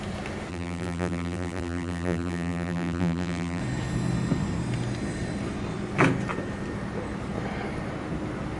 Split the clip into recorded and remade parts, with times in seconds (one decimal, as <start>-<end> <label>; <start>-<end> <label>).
0.0-0.5 recorded; 0.5-3.6 remade; 3.6-8.6 recorded

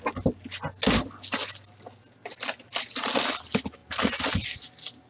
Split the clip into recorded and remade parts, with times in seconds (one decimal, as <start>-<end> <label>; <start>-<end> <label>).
0.0-5.1 recorded